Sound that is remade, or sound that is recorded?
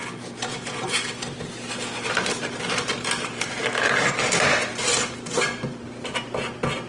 recorded